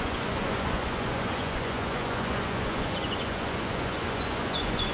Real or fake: fake